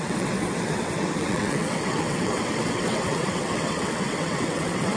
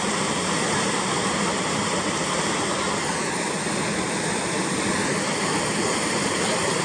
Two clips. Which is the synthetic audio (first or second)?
first